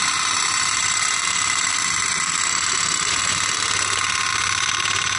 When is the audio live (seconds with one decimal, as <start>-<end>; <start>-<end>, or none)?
3.3-4.3